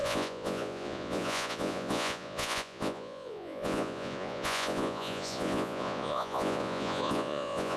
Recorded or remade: remade